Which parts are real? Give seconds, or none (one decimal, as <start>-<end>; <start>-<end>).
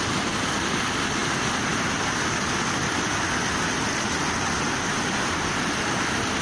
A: 0.0-6.4